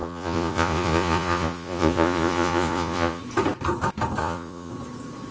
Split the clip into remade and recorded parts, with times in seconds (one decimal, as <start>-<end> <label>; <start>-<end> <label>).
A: 0.0-3.2 remade; 3.2-4.2 recorded; 4.2-4.7 remade; 4.7-5.3 recorded